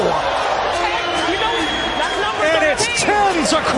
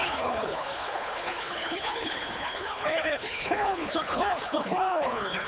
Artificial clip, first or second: second